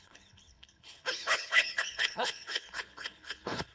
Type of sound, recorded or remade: remade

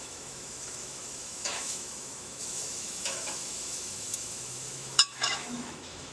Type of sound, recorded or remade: remade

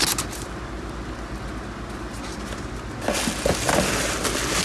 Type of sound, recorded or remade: recorded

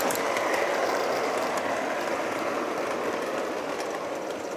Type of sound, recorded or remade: recorded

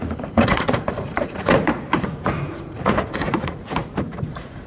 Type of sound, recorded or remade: remade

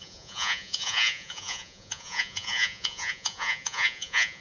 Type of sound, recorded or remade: remade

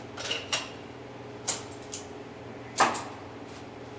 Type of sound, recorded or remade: recorded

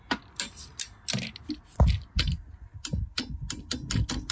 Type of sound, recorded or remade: recorded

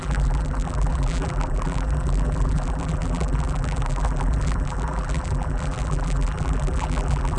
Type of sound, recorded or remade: remade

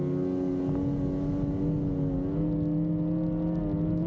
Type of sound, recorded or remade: recorded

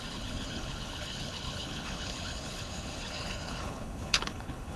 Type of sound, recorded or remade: remade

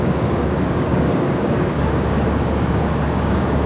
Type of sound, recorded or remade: remade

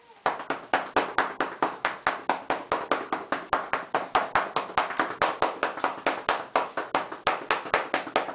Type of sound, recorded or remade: recorded